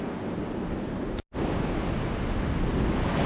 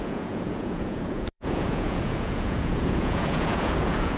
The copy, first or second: second